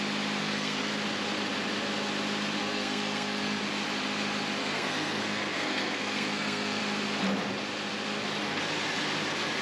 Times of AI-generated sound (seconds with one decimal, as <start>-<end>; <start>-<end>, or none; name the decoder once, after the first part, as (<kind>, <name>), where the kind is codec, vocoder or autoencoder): 0.4-0.9 (codec, SNAC); 2.6-3.6; 4.6-6.8